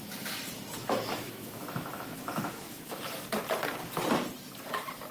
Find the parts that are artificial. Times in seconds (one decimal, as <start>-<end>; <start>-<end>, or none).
0.8-3.0